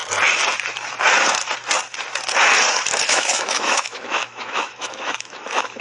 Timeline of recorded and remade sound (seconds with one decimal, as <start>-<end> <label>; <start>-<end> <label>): 0.0-3.1 recorded; 3.1-5.8 remade